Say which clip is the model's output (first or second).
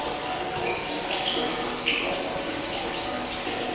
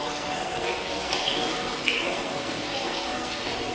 second